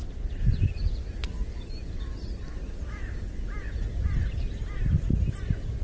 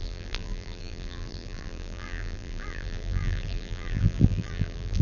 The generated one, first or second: second